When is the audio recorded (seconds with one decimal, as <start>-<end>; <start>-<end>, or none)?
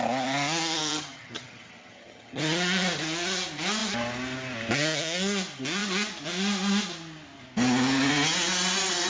0.0-0.8; 2.4-9.1